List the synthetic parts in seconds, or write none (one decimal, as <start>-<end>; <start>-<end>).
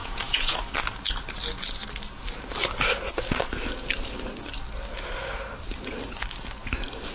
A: 0.0-0.6